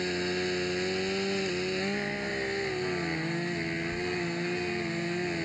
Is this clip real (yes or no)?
yes